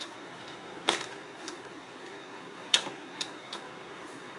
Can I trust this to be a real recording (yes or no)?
no